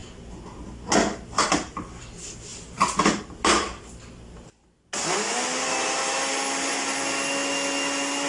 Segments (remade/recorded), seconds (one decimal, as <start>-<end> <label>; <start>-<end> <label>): 0.0-8.3 recorded